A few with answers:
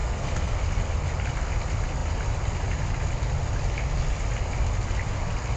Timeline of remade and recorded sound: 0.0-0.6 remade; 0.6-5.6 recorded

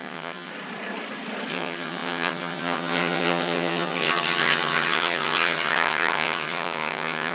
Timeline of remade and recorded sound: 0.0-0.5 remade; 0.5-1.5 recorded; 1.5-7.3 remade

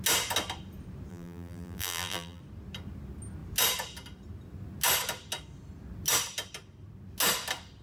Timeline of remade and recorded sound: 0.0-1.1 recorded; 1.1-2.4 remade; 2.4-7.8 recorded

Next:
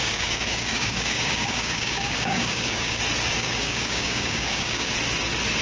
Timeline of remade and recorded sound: 0.0-3.0 remade; 3.0-3.4 recorded; 3.4-4.9 remade; 4.9-5.6 recorded

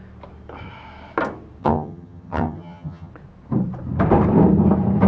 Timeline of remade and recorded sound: 0.0-1.6 recorded; 1.6-3.1 remade; 3.1-5.1 recorded

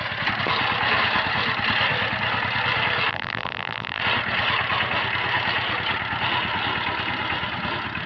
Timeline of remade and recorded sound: 0.0-3.1 recorded; 3.1-4.0 remade; 4.0-8.1 recorded

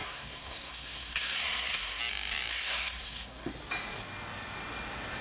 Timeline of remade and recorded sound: 0.0-2.0 remade; 2.0-2.5 recorded; 2.5-3.5 remade; 3.5-5.2 recorded

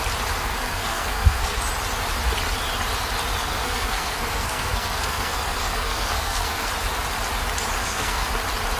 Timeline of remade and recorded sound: 0.0-0.4 recorded; 0.4-1.6 remade; 1.6-3.4 recorded; 3.4-6.7 remade; 6.7-7.8 recorded; 7.8-8.3 remade; 8.3-8.8 recorded